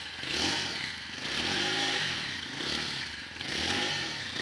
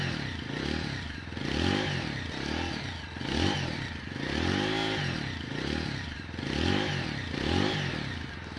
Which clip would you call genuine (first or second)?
second